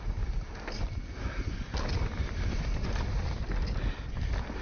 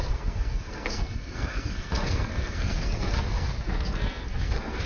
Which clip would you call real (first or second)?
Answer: first